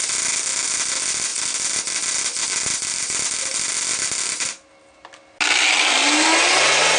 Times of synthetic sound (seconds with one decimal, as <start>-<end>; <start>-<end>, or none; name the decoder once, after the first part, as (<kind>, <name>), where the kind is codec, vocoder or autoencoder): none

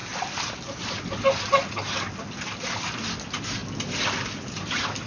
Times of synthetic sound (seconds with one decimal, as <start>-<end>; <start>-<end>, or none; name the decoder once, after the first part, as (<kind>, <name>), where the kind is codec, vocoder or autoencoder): none

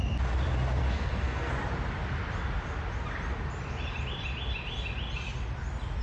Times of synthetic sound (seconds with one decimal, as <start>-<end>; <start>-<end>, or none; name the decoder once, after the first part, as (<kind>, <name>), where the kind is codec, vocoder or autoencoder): 0.8-1.5 (codec, SNAC)

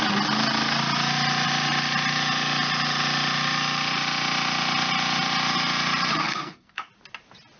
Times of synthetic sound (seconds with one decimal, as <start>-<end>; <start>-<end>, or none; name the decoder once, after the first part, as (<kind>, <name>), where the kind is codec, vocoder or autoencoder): 6.2-6.9 (codec, SNAC)

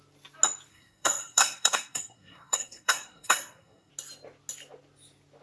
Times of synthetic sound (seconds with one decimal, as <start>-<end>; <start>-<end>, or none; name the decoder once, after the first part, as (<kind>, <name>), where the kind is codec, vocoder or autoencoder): 0.7-3.9 (codec, SNAC)

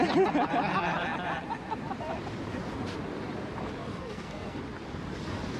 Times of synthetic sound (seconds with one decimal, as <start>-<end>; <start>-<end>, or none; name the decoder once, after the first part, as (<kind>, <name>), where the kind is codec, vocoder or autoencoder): 3.9-4.6 (codec, SNAC)

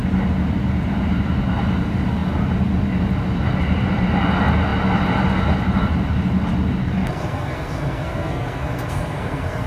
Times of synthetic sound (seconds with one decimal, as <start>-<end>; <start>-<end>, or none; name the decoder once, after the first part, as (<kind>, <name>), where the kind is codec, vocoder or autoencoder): 6.8-9.7 (codec, SNAC)